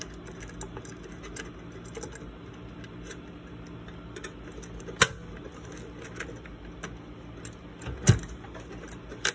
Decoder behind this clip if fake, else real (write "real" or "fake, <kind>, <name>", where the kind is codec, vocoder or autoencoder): real